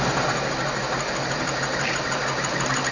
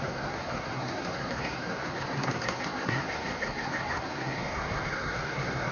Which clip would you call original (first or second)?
first